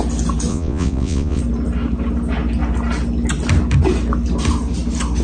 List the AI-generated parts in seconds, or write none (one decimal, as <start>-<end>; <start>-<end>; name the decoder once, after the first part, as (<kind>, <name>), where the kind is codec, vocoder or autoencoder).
0.5-1.4 (vocoder, Vocos)